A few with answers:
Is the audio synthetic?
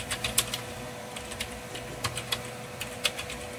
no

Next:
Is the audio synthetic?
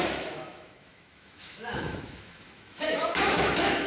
yes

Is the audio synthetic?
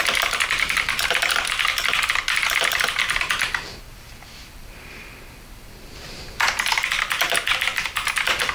yes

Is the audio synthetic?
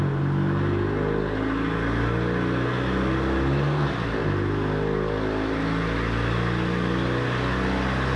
no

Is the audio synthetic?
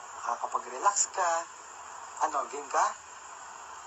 no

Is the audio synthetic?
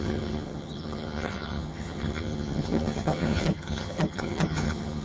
yes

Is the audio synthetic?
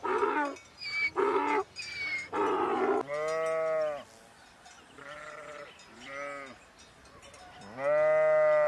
no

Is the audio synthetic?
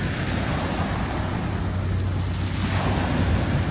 no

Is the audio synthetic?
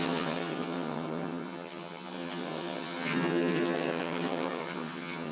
yes